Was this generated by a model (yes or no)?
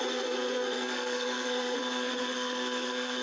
yes